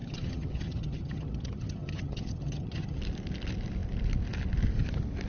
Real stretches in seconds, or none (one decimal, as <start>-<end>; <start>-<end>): 3.0-5.3